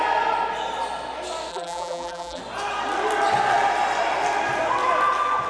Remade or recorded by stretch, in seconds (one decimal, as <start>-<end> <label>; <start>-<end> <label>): 0.0-1.5 recorded; 1.5-2.4 remade; 2.4-5.5 recorded